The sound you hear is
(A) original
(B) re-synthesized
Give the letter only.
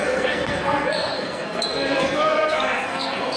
B